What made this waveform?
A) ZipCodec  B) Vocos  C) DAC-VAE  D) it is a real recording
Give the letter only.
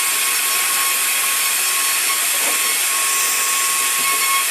D